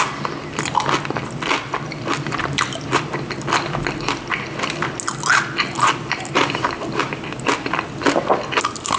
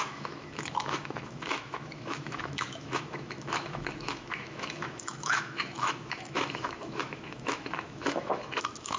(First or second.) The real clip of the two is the first